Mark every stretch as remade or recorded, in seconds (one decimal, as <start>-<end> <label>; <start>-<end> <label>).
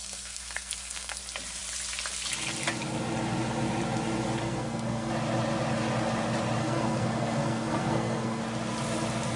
0.0-1.2 remade; 1.2-4.4 recorded; 4.4-5.1 remade; 5.1-6.6 recorded; 6.6-8.4 remade; 8.4-9.4 recorded